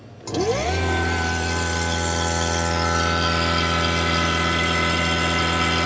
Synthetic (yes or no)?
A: no